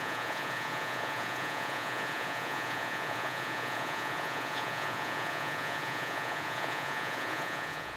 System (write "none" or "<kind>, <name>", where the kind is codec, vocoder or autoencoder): vocoder, Vocos